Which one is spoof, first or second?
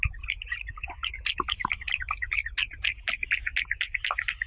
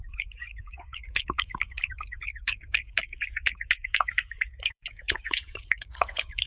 second